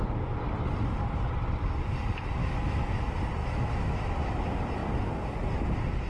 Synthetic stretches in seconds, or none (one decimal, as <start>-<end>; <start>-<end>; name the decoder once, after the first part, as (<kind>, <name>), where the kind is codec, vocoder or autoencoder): 2.4-3.0 (autoencoder, DAC-VAE); 3.4-4.3

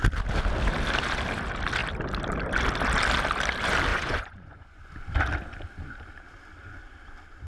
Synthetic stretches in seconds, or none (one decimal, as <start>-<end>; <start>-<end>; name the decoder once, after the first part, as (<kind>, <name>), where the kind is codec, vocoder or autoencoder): 3.9-4.9 (vocoder, Vocos)

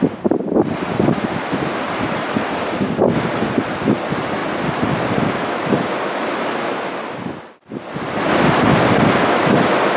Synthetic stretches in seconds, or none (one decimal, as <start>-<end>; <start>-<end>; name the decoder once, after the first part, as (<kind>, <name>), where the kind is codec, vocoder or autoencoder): none

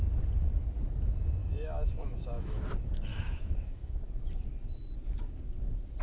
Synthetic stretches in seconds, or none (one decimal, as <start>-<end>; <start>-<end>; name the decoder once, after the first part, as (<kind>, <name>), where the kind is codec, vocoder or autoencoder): 1.4-2.6 (autoencoder, DAC-VAE); 3.1-4.0

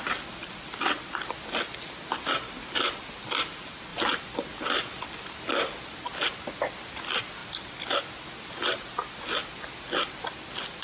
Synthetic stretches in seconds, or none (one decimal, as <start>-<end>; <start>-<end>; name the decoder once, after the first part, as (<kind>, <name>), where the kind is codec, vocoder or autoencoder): none

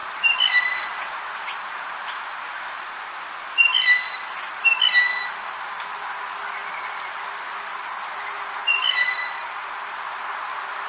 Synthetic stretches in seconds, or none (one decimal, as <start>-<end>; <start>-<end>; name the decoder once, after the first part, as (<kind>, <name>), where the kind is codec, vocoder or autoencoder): 0.0-4.4 (vocoder, BigVGAN v2); 6.6-7.2; 8.6-10.3

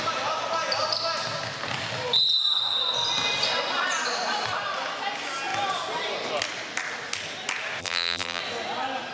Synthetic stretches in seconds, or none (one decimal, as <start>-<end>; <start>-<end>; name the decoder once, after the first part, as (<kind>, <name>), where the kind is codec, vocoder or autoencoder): 7.8-8.4 (vocoder, BigVGAN v2)

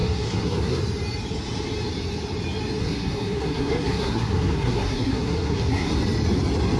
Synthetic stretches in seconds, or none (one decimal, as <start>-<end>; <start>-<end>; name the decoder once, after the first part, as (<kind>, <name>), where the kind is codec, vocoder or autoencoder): 0.0-0.8 (codec, SNAC); 2.8-5.9